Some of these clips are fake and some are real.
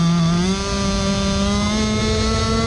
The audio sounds real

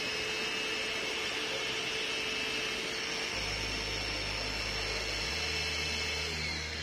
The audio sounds real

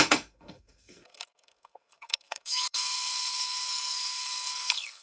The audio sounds fake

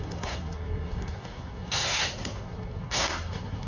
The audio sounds fake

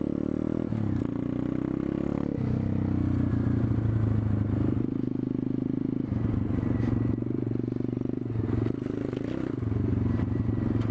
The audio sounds real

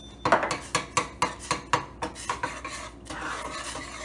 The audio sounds real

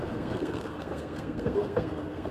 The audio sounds fake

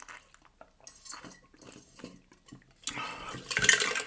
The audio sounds real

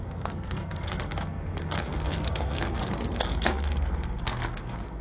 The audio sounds fake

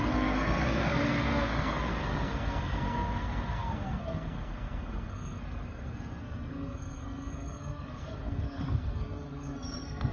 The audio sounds fake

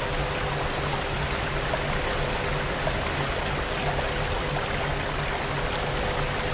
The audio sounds real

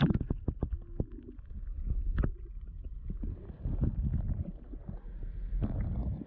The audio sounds real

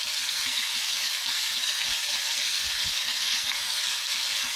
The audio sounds fake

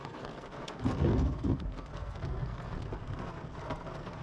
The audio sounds fake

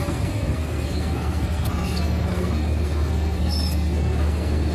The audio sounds fake